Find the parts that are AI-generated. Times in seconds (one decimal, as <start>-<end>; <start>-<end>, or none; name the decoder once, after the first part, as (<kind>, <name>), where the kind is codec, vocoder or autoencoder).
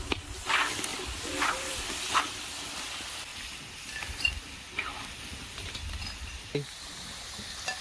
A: 0.9-2.1 (vocoder, BigVGAN v2); 4.9-5.8